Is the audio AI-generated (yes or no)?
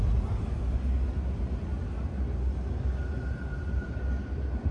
no